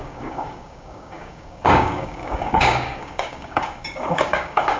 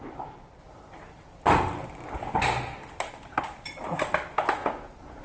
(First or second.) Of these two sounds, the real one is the second